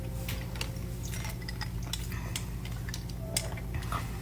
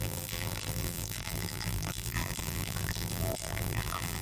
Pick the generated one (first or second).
second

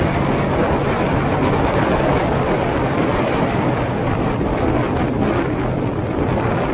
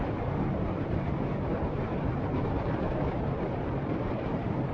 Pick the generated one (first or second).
second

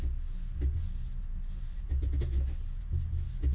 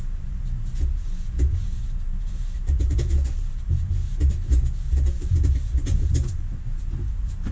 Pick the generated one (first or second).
second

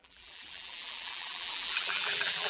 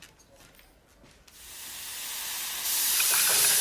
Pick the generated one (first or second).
first